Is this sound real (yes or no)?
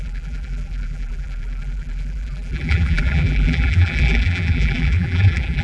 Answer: no